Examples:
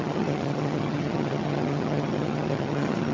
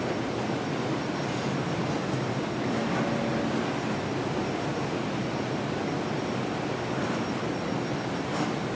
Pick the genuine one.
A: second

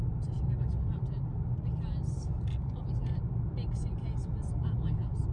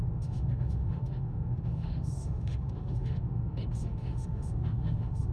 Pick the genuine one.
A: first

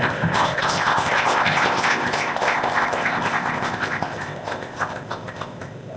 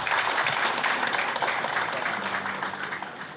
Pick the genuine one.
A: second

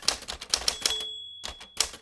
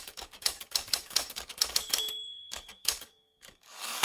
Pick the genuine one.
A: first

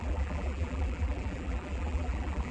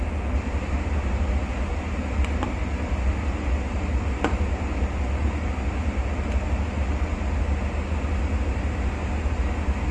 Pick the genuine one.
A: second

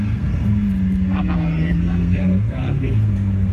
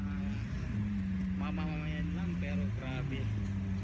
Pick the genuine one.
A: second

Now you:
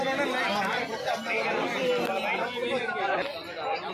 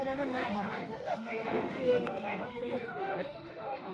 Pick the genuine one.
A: first